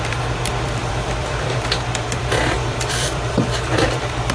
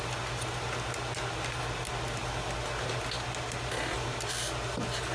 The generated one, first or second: first